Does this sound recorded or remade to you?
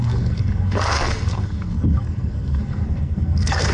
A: remade